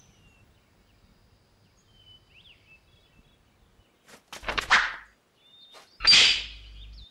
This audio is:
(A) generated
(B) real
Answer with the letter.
B